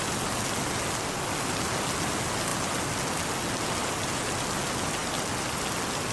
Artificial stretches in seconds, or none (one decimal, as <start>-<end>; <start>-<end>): none